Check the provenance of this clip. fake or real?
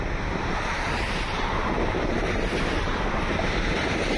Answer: real